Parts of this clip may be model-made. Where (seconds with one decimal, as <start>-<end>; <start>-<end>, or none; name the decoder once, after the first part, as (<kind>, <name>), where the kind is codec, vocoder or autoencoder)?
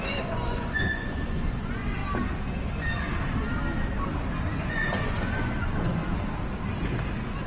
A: 0.0-2.0 (vocoder, Vocos); 4.6-6.0